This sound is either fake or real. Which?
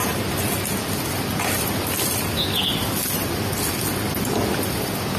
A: real